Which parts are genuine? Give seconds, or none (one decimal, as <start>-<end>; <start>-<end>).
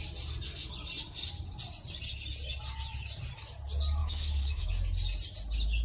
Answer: 0.0-4.0; 4.7-5.8